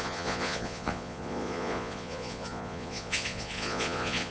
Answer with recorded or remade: remade